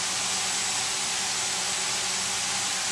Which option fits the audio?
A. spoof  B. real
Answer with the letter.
B